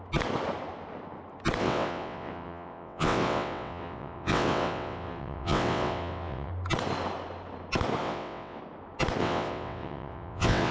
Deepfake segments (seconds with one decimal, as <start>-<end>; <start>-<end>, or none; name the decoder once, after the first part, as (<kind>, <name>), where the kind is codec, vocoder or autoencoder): 1.6-6.5 (vocoder, WaveNeXt); 8.0-8.6; 9.2-10.7